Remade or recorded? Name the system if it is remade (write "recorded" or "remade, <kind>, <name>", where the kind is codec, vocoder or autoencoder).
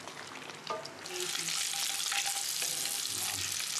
recorded